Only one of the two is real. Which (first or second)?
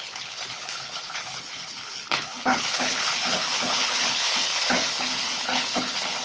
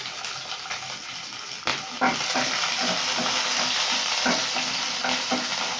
second